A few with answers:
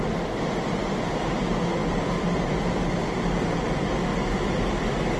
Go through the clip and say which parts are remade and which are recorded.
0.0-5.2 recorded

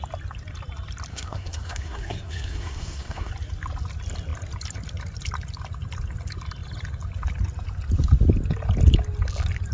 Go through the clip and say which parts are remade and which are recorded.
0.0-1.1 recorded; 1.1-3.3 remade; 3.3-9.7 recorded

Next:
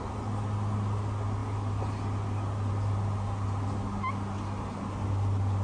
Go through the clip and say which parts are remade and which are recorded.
0.0-5.6 recorded

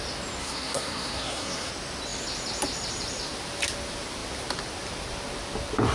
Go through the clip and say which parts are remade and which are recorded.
0.0-0.4 recorded; 0.4-1.7 remade; 1.7-5.9 recorded

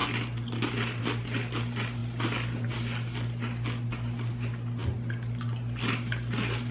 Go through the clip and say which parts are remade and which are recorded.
0.0-6.7 recorded